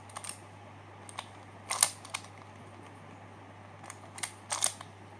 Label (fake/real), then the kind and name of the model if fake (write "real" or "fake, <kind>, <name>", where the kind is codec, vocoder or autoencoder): real